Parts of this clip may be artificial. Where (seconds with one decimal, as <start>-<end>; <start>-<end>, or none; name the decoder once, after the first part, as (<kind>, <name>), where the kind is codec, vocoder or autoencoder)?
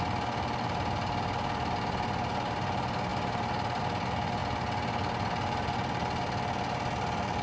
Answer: none